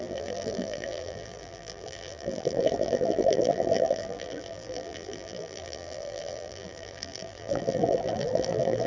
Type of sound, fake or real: fake